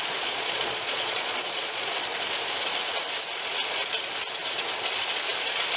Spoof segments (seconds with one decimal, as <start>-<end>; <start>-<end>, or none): 0.0-2.1